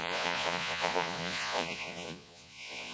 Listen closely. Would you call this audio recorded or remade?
remade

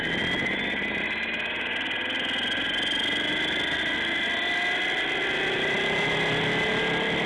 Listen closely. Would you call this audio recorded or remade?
recorded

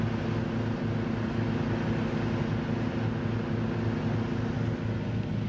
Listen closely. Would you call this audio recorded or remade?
recorded